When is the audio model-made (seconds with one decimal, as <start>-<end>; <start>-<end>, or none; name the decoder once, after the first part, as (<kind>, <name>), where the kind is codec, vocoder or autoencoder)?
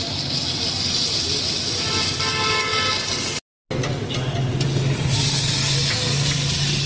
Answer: none